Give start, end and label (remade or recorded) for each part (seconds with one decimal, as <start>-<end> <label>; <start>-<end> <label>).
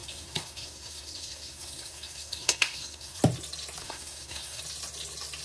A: 0.0-3.2 remade; 3.2-3.8 recorded; 3.8-4.6 remade; 4.6-5.4 recorded